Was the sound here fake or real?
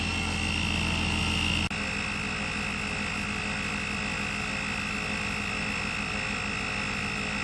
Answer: real